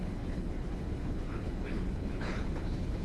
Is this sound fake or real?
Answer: fake